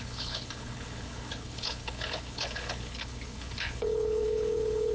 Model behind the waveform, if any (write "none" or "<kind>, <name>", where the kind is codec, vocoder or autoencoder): codec, HILCodec